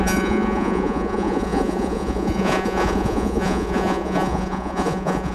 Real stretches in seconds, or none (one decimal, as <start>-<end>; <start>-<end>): none